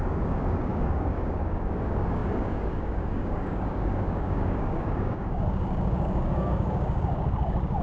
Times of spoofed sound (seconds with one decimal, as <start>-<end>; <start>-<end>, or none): 0.0-7.8